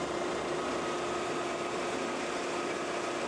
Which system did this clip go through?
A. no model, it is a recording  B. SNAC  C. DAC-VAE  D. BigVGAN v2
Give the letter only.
A